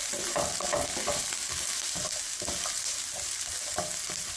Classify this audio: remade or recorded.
recorded